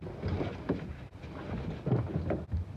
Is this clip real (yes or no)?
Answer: yes